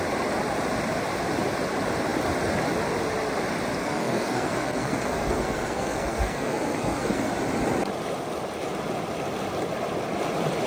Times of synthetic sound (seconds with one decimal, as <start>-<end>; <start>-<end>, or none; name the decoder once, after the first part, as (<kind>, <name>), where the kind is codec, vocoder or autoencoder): 3.8-7.3 (codec, SNAC)